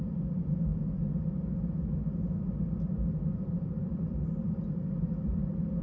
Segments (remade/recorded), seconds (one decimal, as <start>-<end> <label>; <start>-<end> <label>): 0.0-5.8 recorded

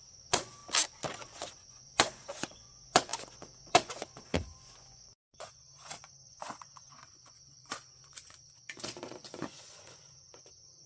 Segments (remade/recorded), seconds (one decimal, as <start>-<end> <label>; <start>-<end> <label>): 0.0-0.6 remade; 0.6-1.2 recorded; 1.2-10.9 remade

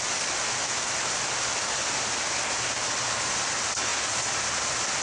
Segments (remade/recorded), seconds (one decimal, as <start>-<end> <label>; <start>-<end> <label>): 0.0-5.0 recorded

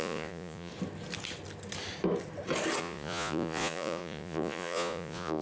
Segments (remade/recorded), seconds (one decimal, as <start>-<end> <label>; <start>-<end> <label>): 0.0-0.7 remade; 0.7-2.8 recorded; 2.8-5.4 remade